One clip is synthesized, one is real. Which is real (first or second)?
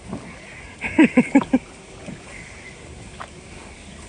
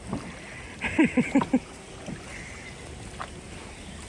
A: second